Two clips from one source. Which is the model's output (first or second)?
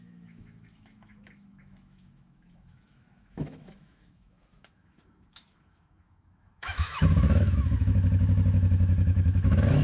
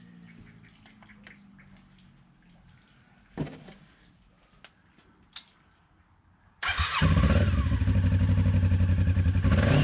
first